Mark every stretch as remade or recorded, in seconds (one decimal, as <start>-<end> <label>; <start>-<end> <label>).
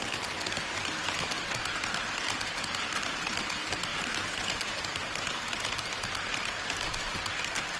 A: 0.0-7.8 recorded